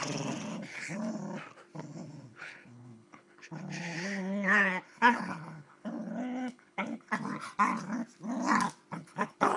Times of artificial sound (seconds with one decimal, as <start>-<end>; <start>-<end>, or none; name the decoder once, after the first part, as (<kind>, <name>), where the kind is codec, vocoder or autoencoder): 0.5-1.0 (codec, HILCodec); 2.3-7.1; 9.0-9.6